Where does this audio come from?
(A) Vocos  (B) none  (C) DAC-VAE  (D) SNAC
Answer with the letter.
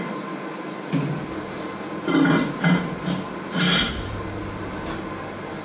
B